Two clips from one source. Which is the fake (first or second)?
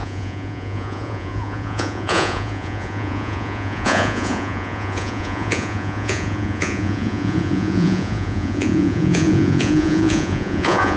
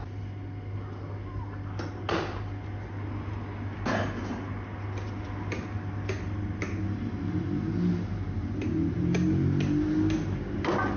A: first